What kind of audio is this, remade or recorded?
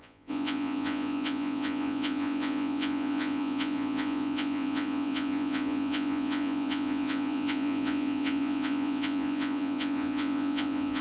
remade